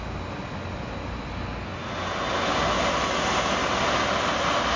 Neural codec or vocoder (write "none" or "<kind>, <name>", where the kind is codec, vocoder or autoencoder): none